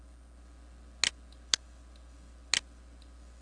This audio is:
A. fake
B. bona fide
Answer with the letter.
B